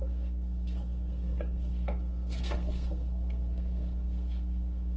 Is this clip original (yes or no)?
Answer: no